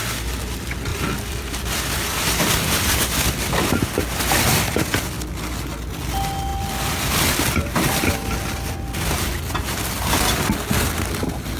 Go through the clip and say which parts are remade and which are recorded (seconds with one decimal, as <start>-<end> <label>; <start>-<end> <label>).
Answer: 0.0-0.9 recorded; 0.9-5.2 remade; 5.2-6.5 recorded; 6.5-8.0 remade; 8.0-11.6 recorded